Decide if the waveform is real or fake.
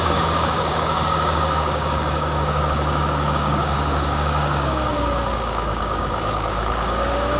fake